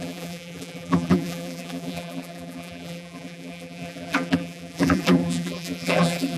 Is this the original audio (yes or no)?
no